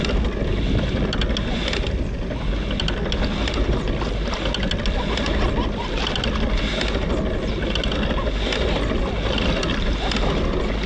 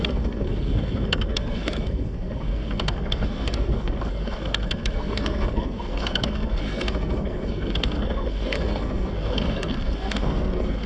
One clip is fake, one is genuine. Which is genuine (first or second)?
first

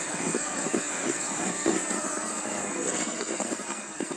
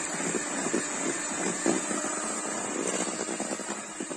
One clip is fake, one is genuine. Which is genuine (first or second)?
second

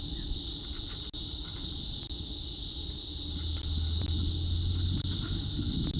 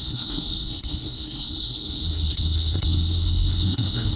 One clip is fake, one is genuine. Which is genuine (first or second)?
first